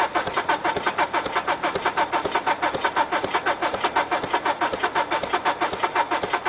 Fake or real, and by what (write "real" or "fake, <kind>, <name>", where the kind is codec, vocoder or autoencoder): real